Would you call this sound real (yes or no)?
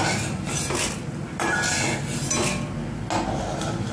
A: yes